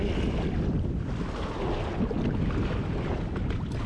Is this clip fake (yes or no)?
no